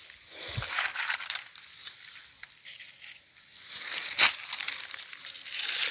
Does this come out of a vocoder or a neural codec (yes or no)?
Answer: no